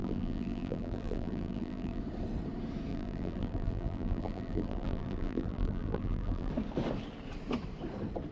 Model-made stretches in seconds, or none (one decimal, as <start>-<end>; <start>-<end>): 0.0-2.0; 2.9-6.5